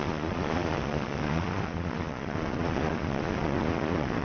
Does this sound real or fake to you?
fake